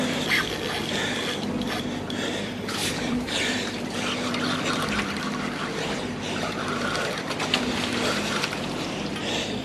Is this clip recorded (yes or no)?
no